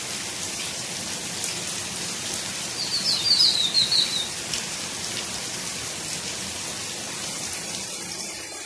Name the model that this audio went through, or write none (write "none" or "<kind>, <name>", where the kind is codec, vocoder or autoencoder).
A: none